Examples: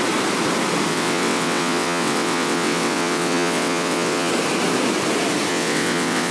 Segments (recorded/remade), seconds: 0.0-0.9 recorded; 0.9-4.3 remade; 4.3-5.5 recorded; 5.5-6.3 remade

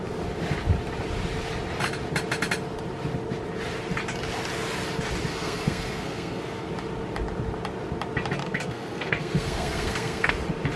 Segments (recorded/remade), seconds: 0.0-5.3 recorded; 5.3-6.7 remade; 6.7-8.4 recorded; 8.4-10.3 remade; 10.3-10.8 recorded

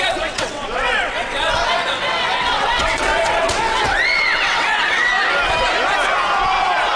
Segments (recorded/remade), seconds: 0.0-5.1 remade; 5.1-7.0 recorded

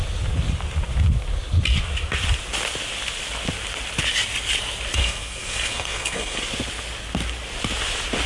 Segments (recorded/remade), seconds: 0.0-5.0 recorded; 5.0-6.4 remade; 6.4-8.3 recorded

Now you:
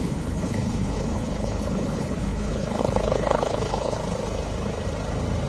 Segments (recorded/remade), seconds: 0.0-4.0 remade; 4.0-5.5 recorded

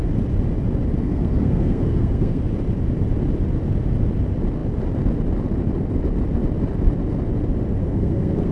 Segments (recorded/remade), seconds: 0.0-1.0 recorded; 1.0-2.4 remade; 2.4-7.8 recorded; 7.8-8.5 remade

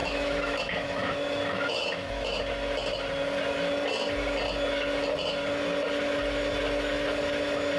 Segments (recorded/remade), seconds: 0.0-2.4 remade; 2.4-7.8 recorded